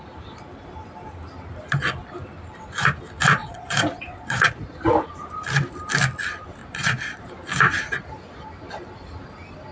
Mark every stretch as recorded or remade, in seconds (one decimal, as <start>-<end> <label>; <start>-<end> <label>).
0.0-3.4 recorded; 3.4-4.9 remade; 4.9-6.6 recorded; 6.6-7.2 remade; 7.2-9.7 recorded